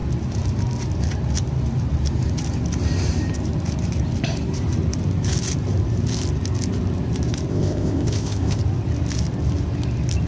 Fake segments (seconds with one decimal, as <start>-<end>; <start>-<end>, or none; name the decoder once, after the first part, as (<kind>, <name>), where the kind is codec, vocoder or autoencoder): 7.5-8.6 (codec, ZipCodec)